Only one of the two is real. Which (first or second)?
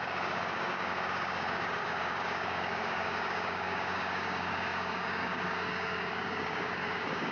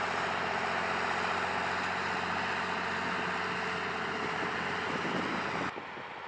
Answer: second